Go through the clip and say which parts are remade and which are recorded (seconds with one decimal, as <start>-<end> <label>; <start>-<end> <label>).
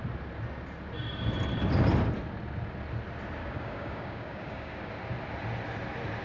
0.0-3.4 recorded; 3.4-4.9 remade; 4.9-6.2 recorded